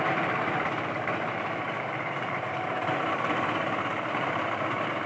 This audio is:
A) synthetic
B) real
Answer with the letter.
A